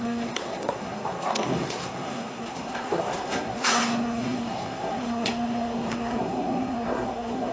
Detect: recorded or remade remade